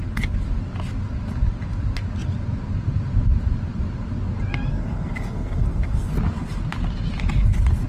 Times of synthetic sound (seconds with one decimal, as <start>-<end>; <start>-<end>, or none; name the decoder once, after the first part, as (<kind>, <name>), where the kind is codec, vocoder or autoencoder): 4.7-6.1 (codec, SNAC)